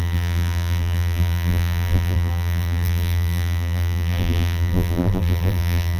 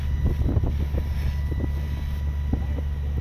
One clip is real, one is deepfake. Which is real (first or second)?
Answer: second